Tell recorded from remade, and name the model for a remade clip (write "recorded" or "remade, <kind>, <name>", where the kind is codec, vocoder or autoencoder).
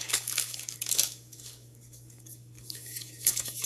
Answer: remade, codec, DAC